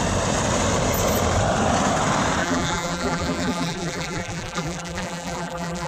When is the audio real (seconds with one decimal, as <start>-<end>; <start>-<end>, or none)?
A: 0.0-2.4